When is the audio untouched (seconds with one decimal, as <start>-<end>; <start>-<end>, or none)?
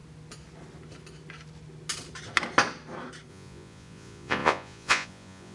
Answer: 0.0-3.3